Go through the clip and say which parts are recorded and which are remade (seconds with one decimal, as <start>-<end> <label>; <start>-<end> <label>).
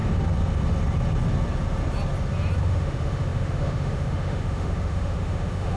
0.0-2.6 recorded; 2.6-5.8 remade